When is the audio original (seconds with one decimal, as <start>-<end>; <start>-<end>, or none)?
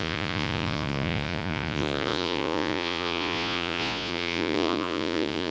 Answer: none